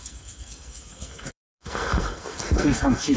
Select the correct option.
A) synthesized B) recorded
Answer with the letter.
A